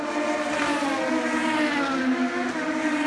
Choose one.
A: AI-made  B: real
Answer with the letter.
B